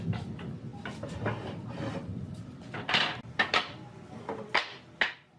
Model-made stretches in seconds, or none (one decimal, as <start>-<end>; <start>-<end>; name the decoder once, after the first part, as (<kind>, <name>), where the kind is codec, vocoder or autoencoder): none